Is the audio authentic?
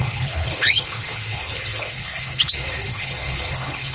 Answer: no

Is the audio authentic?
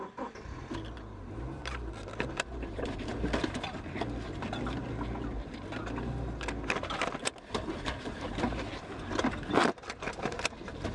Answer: yes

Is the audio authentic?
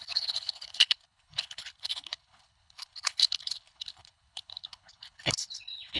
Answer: no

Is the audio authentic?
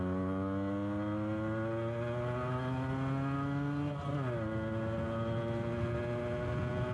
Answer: yes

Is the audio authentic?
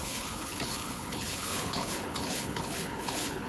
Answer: no